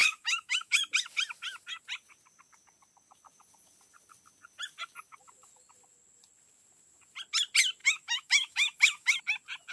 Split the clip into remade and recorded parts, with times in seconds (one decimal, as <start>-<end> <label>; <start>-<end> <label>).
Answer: 0.0-0.8 remade; 0.8-7.8 recorded; 7.8-9.2 remade; 9.2-9.7 recorded